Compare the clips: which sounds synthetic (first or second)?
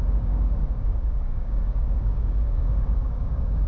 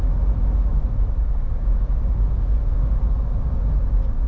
first